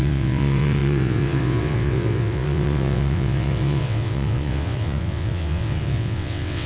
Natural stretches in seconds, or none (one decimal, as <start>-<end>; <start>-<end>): none